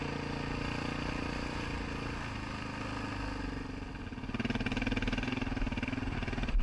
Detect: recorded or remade recorded